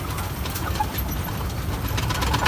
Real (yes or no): no